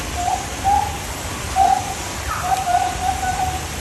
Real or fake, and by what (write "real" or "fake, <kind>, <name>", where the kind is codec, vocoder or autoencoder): fake, vocoder, BigVGAN v2